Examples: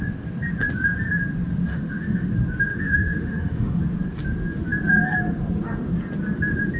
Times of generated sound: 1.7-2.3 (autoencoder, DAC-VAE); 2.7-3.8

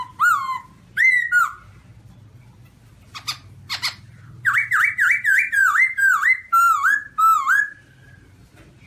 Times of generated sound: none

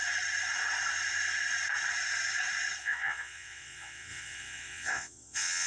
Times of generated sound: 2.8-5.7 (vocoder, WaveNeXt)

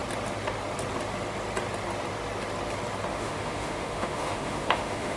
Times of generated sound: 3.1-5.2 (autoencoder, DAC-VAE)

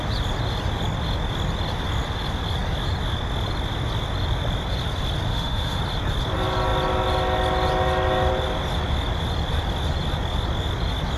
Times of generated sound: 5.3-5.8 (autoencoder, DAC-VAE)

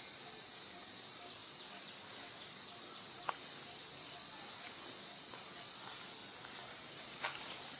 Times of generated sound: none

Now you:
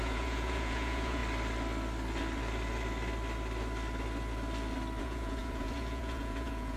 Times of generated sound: 0.0-1.2 (vocoder, Vocos); 5.0-6.8

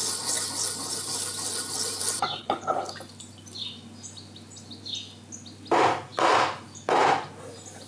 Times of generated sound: 2.4-2.9 (codec, HILCodec)